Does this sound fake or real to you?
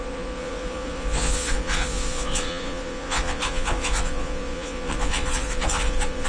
fake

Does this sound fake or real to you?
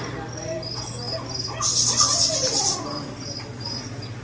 real